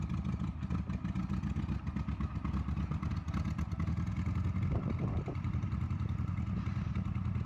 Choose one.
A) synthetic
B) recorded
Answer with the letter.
B